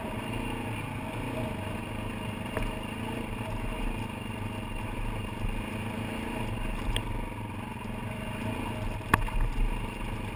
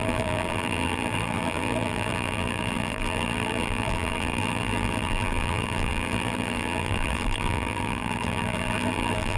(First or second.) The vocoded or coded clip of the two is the second